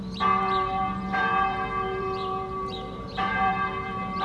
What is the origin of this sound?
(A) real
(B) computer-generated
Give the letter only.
B